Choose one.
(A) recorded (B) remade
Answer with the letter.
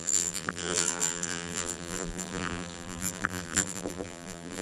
B